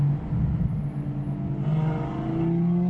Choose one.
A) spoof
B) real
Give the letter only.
B